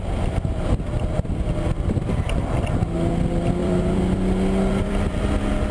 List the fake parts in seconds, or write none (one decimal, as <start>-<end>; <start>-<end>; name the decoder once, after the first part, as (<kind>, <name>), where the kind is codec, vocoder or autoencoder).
3.6-5.2 (vocoder, BigVGAN v2)